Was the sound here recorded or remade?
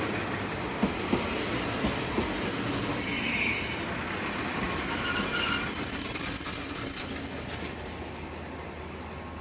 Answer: recorded